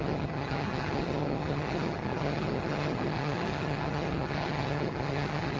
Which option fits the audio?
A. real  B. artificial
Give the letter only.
B